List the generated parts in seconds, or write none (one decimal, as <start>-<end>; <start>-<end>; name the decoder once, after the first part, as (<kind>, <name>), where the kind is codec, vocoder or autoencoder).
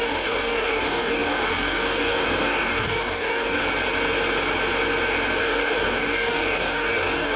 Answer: 0.0-3.6 (codec, DAC); 5.4-7.4